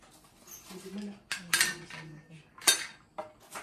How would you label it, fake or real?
real